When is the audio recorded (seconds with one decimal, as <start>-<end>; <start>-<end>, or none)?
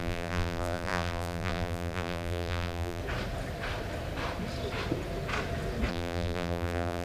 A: 3.0-5.9